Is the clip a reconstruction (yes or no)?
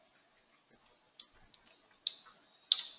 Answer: no